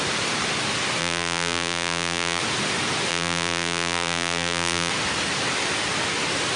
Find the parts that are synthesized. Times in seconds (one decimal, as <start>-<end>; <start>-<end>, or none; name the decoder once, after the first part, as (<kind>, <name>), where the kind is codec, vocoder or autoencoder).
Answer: 1.0-2.4 (vocoder, BigVGAN v2); 3.1-4.9